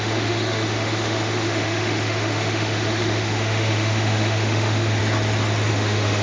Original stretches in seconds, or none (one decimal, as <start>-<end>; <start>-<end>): 5.0-5.7

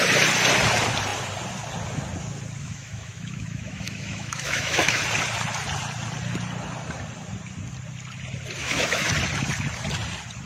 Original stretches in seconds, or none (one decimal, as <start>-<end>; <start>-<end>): 0.0-2.6; 5.0-8.6; 9.1-10.5